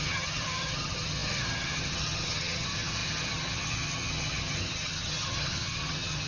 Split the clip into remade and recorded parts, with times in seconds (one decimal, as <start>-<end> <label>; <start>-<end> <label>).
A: 0.0-6.3 remade